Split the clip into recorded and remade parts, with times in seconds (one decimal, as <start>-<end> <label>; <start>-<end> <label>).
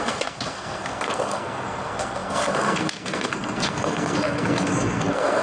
0.0-5.4 remade